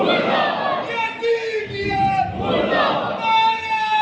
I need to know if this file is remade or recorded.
recorded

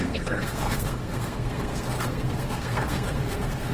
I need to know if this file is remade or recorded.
remade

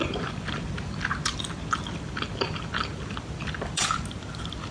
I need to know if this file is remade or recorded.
recorded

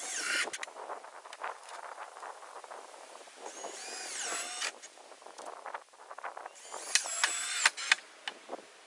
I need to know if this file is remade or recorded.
recorded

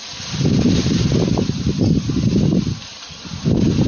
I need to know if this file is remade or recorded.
recorded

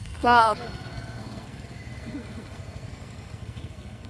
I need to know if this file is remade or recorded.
remade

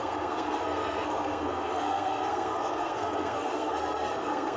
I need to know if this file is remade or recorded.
remade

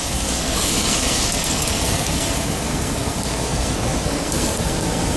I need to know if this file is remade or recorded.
remade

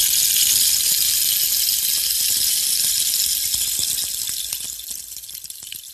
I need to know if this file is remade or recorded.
recorded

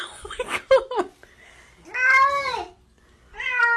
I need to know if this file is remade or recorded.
recorded